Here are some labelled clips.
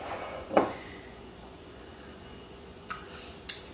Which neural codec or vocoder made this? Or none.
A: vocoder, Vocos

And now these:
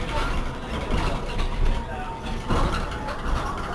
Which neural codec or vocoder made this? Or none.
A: none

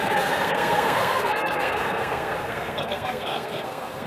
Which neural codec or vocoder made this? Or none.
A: codec, SNAC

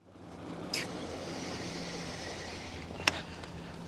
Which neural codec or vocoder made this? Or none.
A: vocoder, BigVGAN v2